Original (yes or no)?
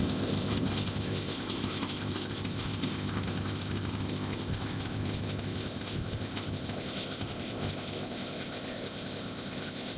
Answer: no